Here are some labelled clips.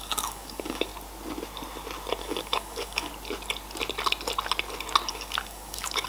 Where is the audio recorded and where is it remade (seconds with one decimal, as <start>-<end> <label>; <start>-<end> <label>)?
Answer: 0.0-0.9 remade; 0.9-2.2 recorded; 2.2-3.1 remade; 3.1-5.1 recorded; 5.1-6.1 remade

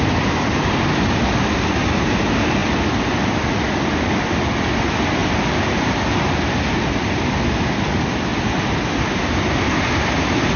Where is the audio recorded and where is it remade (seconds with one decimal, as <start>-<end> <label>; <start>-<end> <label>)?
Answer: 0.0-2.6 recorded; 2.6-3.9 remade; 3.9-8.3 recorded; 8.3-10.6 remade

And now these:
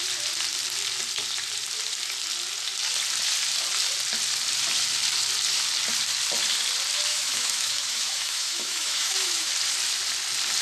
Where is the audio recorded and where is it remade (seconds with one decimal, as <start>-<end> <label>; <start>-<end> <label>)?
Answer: 0.0-7.1 recorded; 7.1-9.5 remade; 9.5-10.6 recorded

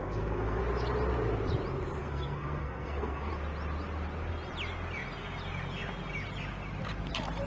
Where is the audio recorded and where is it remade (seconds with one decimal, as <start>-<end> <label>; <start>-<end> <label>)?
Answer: 0.0-0.6 remade; 0.6-2.0 recorded; 2.0-3.3 remade; 3.3-7.5 recorded